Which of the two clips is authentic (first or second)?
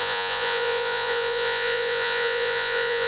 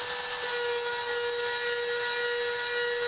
second